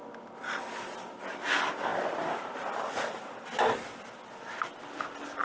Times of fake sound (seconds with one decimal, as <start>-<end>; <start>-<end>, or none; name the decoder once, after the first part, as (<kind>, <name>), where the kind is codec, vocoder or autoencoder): none